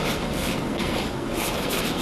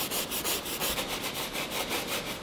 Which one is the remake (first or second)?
first